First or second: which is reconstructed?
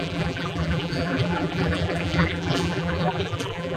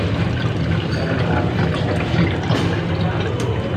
first